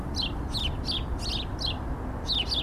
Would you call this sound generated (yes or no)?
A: no